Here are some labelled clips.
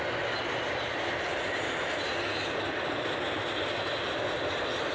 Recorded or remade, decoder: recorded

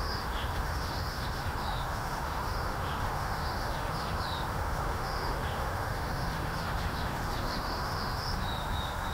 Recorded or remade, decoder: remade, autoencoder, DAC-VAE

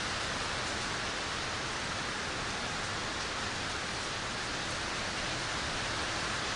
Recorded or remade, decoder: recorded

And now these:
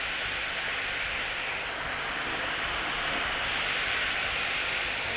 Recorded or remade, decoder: recorded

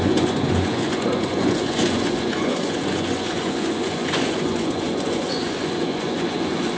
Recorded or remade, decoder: remade, vocoder, Vocos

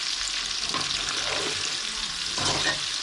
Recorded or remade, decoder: recorded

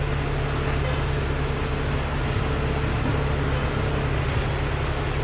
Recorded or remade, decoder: recorded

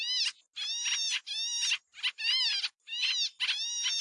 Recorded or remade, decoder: recorded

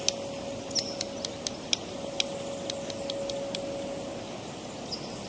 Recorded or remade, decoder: recorded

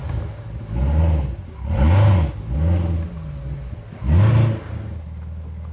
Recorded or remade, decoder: recorded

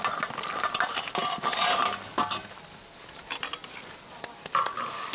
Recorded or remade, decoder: recorded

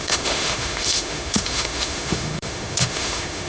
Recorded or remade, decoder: remade, autoencoder, DAC-VAE